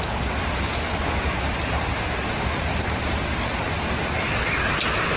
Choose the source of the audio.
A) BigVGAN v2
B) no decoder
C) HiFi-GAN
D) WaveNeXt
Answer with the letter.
B